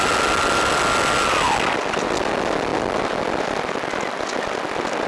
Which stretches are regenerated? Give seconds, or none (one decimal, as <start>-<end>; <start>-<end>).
none